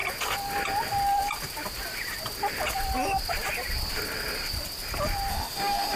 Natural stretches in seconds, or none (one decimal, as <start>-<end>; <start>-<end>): 0.0-5.3